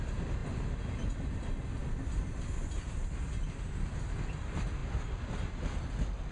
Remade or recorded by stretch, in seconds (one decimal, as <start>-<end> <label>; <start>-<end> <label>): 0.0-6.3 recorded